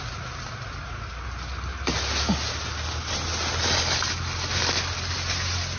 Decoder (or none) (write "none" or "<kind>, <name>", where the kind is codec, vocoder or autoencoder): none